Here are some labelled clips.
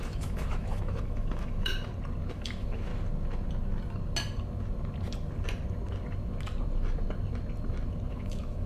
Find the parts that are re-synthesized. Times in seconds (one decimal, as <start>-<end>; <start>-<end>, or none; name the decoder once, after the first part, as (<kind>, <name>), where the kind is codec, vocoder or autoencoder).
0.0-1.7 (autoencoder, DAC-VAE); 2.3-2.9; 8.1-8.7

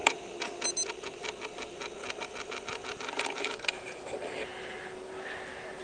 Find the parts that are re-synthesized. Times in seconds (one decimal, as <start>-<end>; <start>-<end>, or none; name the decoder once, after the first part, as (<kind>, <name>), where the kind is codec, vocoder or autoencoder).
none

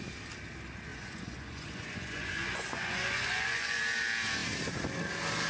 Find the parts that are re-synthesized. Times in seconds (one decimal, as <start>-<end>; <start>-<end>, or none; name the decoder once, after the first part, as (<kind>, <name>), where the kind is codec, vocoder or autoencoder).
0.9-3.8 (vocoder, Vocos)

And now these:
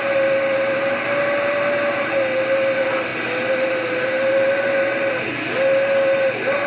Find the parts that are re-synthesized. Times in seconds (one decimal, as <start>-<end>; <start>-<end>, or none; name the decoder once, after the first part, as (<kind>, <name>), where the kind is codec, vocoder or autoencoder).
none

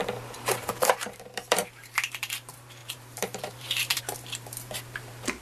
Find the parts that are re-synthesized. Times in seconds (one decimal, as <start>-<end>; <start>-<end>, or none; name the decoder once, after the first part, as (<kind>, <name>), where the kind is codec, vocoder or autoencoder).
0.0-5.4 (vocoder, BigVGAN v2)

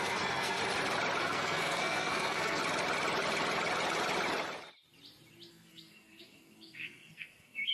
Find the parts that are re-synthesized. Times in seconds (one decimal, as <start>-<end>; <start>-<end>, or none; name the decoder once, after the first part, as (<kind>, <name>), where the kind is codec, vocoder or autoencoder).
0.0-0.6 (codec, SNAC); 1.2-2.6; 5.5-7.7

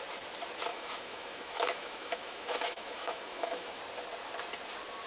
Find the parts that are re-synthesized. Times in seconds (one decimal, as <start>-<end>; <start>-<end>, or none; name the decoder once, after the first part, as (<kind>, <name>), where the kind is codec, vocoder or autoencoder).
0.7-3.8 (autoencoder, DAC-VAE)